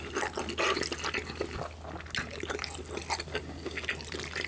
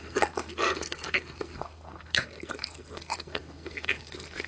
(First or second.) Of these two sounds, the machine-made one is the second